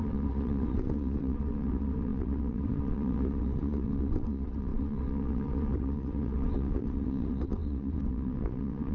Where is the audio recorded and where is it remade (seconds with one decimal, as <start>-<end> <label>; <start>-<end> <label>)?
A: 0.0-8.9 remade